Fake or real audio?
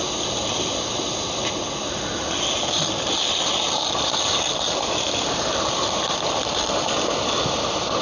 real